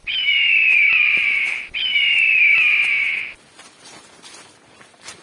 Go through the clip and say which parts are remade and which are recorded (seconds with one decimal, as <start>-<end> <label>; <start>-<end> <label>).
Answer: 0.0-2.4 remade; 2.4-5.2 recorded